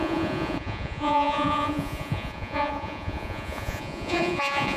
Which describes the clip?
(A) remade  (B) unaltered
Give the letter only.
A